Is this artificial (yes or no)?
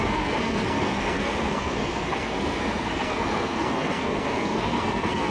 yes